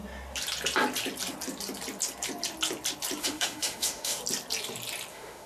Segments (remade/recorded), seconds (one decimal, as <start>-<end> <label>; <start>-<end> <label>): 0.0-3.2 recorded; 3.2-4.2 remade; 4.2-5.1 recorded; 5.1-5.5 remade